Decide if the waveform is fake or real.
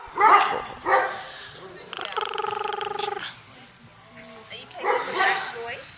real